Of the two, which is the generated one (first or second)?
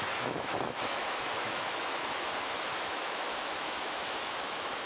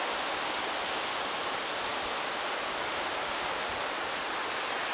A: first